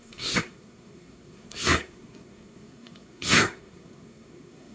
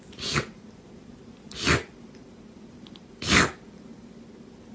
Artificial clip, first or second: first